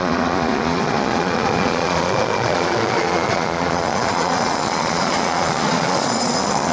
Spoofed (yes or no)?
yes